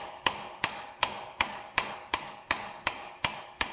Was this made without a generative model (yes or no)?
no